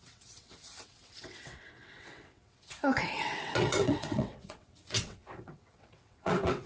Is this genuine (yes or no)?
no